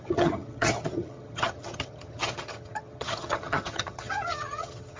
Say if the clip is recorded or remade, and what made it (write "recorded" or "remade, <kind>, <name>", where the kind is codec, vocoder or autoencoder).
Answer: remade, vocoder, HiFi-GAN